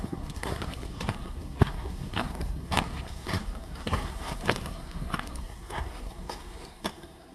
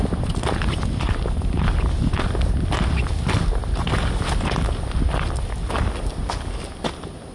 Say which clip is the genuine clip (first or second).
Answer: second